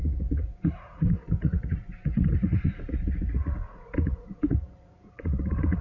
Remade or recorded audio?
remade